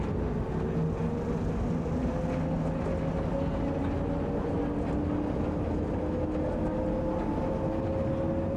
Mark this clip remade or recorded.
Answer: recorded